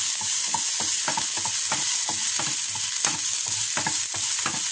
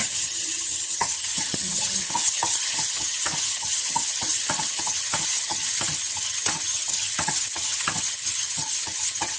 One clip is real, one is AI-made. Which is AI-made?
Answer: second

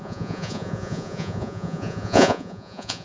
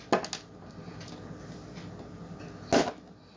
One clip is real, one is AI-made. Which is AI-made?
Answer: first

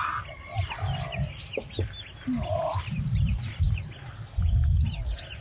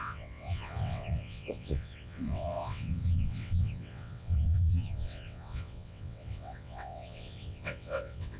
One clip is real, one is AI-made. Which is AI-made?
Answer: second